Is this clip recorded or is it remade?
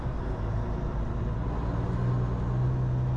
recorded